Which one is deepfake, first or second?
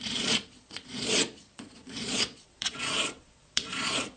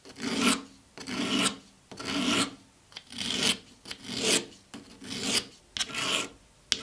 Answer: first